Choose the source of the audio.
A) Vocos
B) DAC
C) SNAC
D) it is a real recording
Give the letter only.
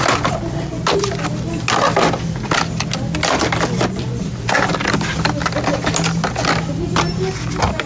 D